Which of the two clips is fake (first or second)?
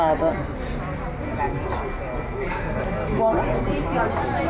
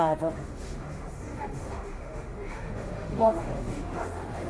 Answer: second